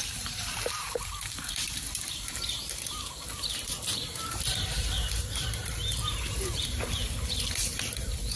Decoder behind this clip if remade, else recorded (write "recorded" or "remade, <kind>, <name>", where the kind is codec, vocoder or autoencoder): remade, vocoder, BigVGAN v2